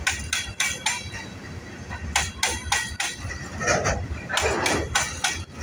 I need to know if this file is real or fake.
real